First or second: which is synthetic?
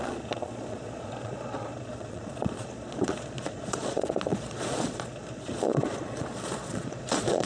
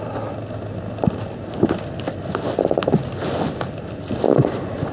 first